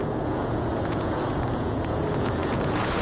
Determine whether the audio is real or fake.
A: fake